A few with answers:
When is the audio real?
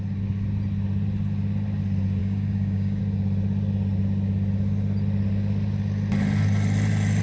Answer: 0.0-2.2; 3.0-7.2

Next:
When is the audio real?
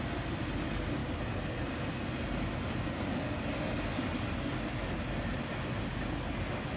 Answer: 0.0-6.8